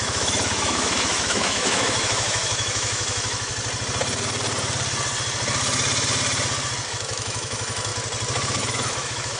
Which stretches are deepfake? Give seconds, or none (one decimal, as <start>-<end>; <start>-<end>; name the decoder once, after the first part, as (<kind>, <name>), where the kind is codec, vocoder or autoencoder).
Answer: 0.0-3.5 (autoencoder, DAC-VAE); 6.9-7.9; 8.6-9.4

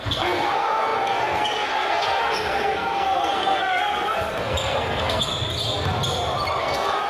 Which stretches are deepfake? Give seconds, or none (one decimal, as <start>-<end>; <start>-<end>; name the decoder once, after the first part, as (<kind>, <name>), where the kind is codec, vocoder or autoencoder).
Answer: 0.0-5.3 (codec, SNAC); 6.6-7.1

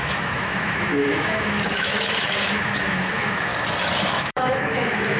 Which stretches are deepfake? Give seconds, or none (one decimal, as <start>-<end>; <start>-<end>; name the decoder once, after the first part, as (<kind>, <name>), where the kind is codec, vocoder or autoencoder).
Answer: 0.0-3.5 (autoencoder, DAC-VAE); 4.1-5.2